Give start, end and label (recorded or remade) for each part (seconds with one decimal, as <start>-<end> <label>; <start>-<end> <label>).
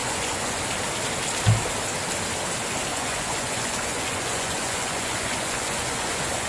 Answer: 0.0-0.6 remade; 0.6-2.9 recorded; 2.9-6.5 remade